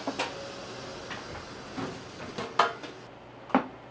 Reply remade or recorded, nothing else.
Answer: recorded